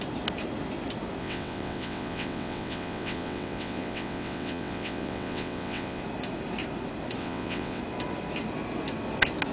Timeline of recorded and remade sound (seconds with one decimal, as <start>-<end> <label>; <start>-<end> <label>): 0.0-1.2 recorded; 1.2-6.0 remade; 6.0-7.2 recorded; 7.2-7.8 remade; 7.8-9.5 recorded